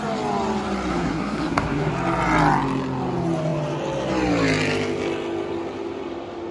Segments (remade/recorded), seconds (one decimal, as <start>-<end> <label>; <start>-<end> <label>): 0.0-0.9 recorded; 0.9-1.9 remade; 1.9-6.5 recorded